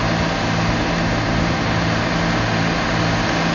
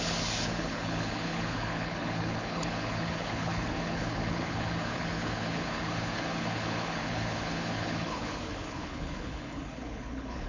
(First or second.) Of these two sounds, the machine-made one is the second